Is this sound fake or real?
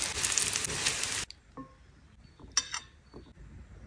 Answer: real